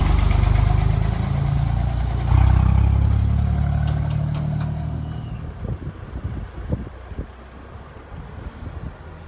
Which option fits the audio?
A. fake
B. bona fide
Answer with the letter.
B